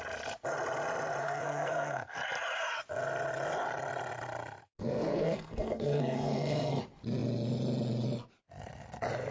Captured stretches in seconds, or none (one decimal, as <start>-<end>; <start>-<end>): 0.0-1.2; 2.2-4.6; 6.8-9.3